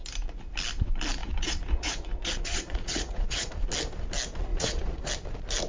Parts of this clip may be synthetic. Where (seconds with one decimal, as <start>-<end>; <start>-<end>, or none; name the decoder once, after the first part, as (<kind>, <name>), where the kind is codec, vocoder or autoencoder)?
1.2-3.5 (vocoder, Vocos); 4.5-5.1